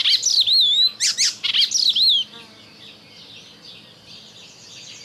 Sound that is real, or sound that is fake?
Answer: real